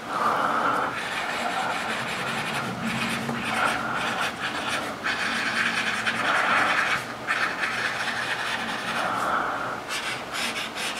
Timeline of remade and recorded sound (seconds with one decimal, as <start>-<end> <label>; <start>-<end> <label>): 0.0-11.0 recorded